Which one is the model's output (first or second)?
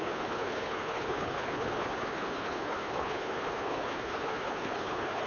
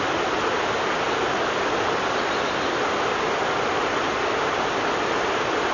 first